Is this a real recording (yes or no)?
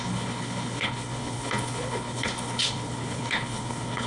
no